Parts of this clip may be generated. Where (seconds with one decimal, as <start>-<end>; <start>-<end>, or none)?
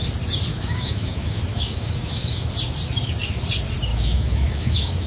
0.5-2.5; 3.9-5.1